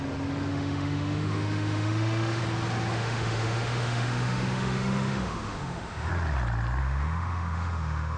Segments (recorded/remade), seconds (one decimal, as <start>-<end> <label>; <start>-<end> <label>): 0.0-0.5 recorded; 0.5-2.4 remade; 2.4-2.9 recorded; 2.9-6.1 remade; 6.1-6.8 recorded; 6.8-8.2 remade